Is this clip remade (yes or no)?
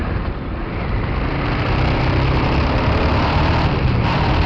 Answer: no